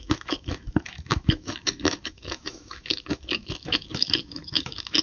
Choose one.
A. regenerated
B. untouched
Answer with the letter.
A